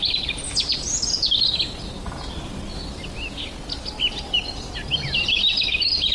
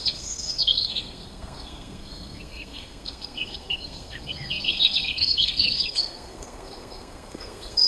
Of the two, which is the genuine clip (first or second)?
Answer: first